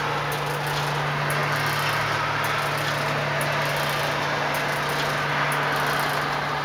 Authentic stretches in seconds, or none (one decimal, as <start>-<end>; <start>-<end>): 0.0-6.6